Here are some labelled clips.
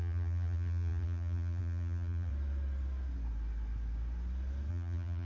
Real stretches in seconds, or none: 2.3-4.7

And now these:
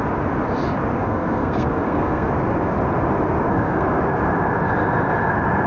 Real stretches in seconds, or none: 0.0-1.0; 2.3-3.5; 4.0-5.7

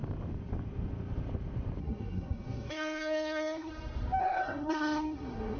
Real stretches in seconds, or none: 0.0-1.8; 3.7-4.2

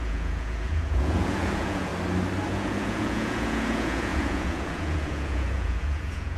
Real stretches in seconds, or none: 1.9-2.5

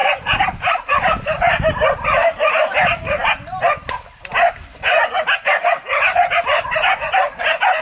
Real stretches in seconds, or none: 0.0-7.8

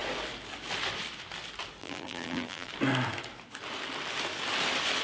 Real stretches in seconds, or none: 0.0-1.8; 2.7-5.0

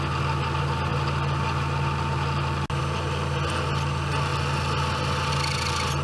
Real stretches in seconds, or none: 0.0-6.0

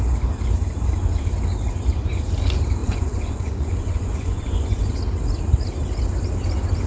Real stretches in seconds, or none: 0.0-2.8; 5.0-6.9